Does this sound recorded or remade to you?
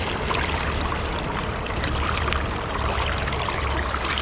remade